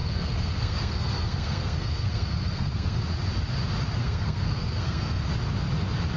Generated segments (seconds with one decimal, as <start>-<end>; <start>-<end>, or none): 0.0-3.0; 4.0-5.3